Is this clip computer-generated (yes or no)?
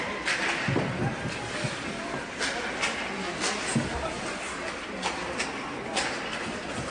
no